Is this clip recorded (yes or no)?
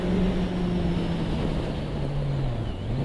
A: yes